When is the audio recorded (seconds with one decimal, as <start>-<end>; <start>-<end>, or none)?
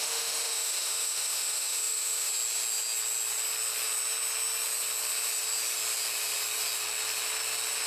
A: 2.3-7.9